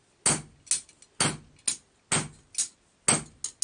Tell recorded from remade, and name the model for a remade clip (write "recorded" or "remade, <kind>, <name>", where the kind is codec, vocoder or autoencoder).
recorded